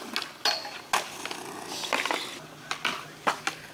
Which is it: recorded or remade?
recorded